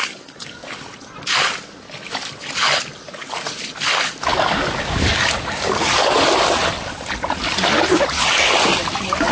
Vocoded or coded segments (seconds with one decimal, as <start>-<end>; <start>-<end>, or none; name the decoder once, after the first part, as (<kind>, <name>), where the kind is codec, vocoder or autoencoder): 0.0-0.7 (codec, DAC); 4.3-6.2